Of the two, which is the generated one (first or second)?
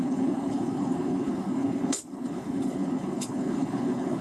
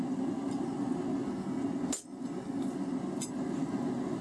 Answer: first